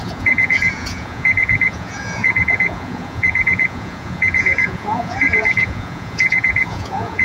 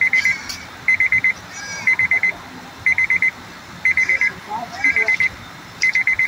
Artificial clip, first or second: first